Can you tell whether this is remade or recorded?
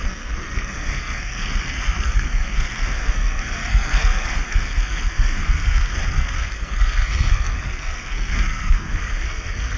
remade